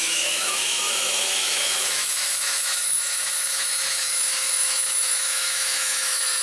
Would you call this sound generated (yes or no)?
yes